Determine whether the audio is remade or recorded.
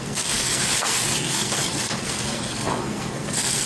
remade